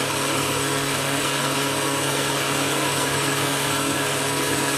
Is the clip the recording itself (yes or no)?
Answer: no